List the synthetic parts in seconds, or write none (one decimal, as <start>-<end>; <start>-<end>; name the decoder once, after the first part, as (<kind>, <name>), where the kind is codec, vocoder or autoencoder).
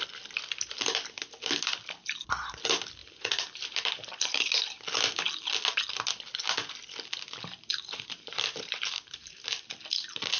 3.0-4.5 (vocoder, BigVGAN v2); 7.7-9.5